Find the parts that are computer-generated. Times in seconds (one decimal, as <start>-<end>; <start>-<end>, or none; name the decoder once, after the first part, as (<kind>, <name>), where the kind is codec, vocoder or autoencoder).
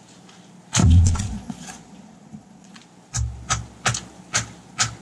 0.8-2.8 (vocoder, Vocos)